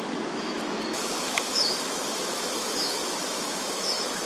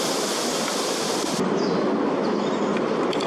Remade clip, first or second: first